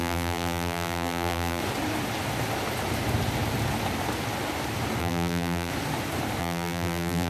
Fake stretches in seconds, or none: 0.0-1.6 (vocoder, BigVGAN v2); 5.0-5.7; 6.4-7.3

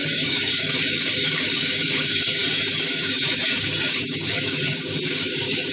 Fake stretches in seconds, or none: 0.0-5.7 (codec, DAC)

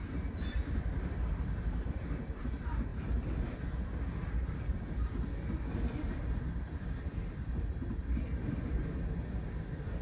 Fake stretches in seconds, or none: none

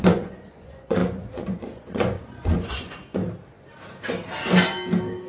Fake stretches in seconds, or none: 0.0-3.2 (vocoder, Vocos)